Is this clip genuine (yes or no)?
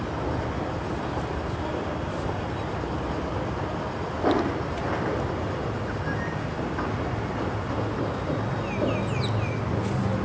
yes